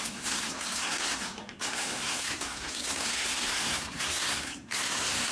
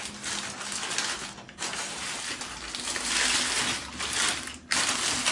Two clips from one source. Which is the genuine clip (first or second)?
second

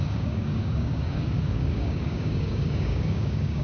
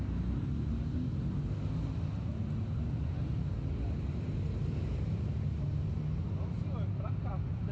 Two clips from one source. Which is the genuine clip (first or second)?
second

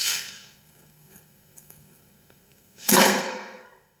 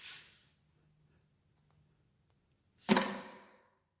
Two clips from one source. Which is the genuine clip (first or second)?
second